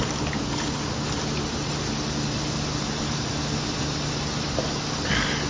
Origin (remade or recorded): recorded